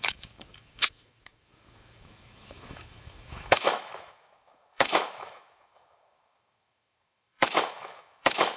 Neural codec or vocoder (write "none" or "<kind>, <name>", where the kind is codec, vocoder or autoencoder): autoencoder, DAC-VAE